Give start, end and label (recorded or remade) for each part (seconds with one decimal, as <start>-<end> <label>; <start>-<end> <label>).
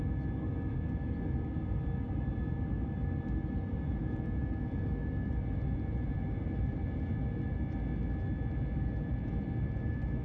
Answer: 0.0-4.0 recorded; 4.0-4.8 remade; 4.8-10.2 recorded